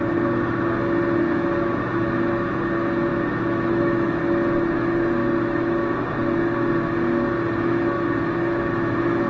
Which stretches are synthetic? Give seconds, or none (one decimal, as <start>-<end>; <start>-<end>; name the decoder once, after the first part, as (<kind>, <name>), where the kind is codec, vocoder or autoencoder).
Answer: 3.1-4.2 (autoencoder, DAC-VAE); 5.5-6.1